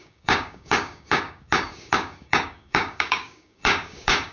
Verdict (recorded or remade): remade